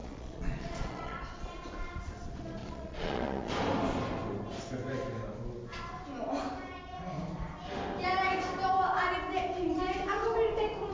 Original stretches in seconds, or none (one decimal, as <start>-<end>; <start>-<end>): 1.2-2.6; 3.5-10.9